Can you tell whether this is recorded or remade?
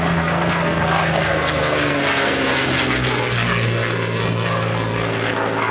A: remade